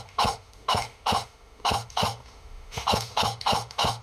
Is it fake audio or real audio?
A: fake